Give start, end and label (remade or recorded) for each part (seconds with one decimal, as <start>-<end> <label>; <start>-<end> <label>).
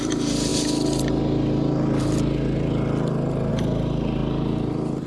0.0-0.5 remade; 0.5-3.5 recorded; 3.5-5.1 remade